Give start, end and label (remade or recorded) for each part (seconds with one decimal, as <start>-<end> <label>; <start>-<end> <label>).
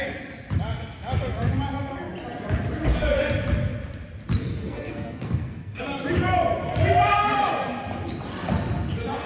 0.0-4.4 recorded; 4.4-5.8 remade; 5.8-9.3 recorded